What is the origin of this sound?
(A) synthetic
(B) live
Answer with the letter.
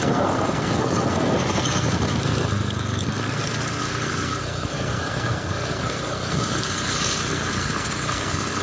A